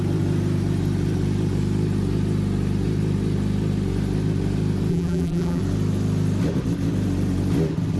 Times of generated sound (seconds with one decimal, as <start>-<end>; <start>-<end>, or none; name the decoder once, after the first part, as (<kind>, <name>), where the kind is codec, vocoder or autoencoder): 4.9-5.6 (vocoder, BigVGAN v2)